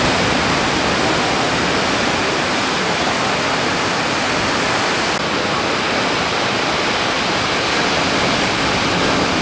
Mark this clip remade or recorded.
recorded